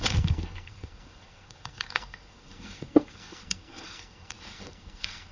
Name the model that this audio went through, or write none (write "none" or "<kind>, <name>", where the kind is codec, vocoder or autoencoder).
codec, SNAC